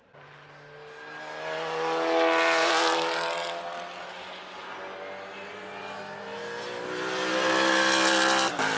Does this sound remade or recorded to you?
recorded